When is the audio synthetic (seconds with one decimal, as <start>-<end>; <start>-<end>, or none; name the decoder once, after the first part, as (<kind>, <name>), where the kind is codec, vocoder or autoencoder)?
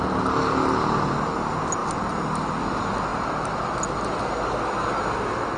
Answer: 1.8-2.5 (vocoder, BigVGAN v2)